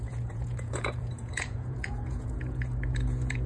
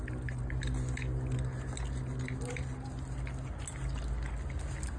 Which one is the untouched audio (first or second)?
second